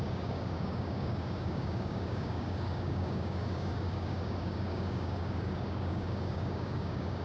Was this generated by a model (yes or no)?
yes